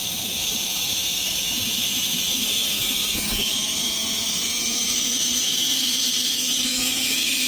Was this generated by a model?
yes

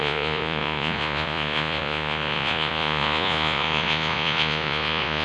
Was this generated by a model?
yes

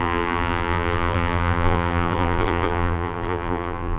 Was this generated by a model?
yes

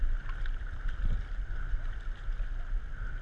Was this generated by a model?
no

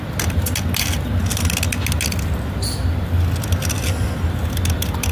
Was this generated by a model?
no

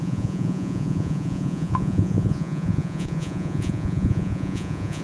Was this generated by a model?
yes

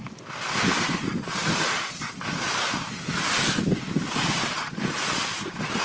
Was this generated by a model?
no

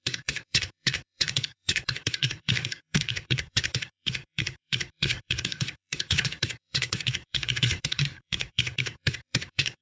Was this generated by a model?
yes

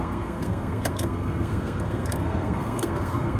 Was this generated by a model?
yes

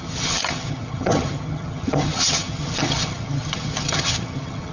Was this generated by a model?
yes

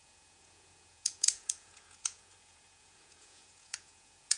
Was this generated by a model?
yes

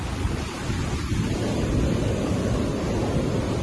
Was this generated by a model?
no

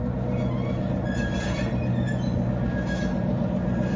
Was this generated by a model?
no